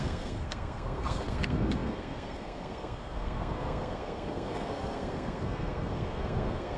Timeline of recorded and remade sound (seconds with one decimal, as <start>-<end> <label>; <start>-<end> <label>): 0.0-6.8 remade